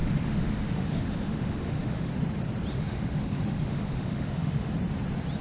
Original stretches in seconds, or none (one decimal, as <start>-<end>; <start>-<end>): 2.1-2.7; 4.7-5.4